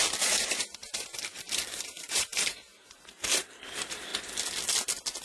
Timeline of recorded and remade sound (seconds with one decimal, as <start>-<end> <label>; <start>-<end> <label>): 0.0-4.1 remade; 4.1-5.2 recorded